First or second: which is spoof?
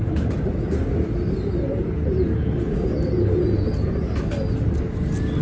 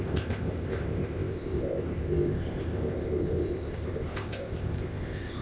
second